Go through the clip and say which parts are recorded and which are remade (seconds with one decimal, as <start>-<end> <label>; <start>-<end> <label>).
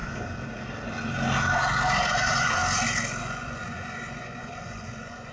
0.0-2.1 recorded; 2.1-2.6 remade; 2.6-3.2 recorded; 3.2-5.3 remade